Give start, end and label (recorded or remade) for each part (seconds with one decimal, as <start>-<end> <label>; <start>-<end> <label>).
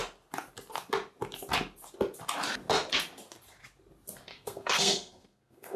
0.0-4.3 recorded; 4.3-5.8 remade